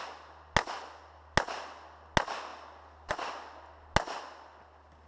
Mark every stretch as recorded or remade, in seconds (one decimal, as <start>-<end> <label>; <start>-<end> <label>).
0.0-5.1 recorded

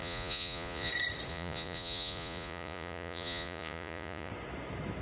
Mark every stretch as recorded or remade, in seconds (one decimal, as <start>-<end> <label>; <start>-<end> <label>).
0.0-0.9 remade; 0.9-1.3 recorded; 1.3-4.3 remade; 4.3-5.0 recorded

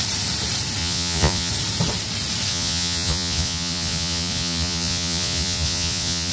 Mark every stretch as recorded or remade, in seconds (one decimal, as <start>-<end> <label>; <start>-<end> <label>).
0.0-0.8 recorded; 0.8-1.5 remade; 1.5-2.5 recorded; 2.5-6.3 remade

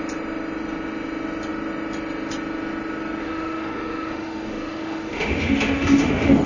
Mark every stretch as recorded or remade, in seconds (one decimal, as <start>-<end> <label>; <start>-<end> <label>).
0.0-3.2 recorded; 3.2-6.5 remade